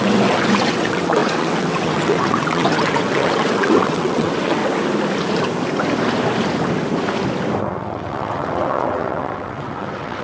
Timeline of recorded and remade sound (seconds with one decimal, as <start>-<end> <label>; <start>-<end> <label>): 0.0-4.6 remade; 4.6-7.6 recorded; 7.6-10.2 remade